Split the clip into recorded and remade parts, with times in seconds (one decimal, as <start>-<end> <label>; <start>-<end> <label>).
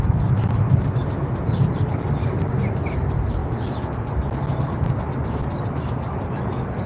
0.0-6.9 recorded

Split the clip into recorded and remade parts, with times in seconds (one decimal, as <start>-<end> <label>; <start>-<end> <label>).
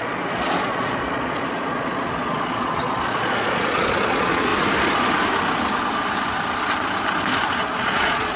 0.0-4.5 remade; 4.5-7.5 recorded; 7.5-8.4 remade